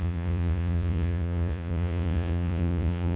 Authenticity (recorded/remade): remade